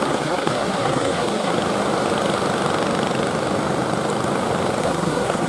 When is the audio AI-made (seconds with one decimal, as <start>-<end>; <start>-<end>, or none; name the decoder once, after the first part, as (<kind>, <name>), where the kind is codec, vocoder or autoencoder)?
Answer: 0.0-1.5 (codec, SNAC); 4.8-5.5